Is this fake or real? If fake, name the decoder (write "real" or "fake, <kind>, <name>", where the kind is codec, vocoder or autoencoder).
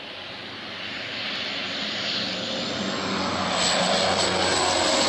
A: real